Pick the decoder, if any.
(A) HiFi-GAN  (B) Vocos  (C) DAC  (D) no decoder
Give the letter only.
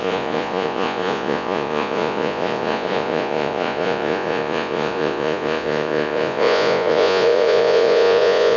B